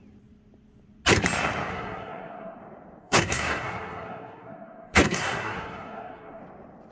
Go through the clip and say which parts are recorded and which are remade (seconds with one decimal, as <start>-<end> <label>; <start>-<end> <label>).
0.0-1.7 recorded; 1.7-2.6 remade; 2.6-3.0 recorded; 3.0-6.4 remade; 6.4-6.9 recorded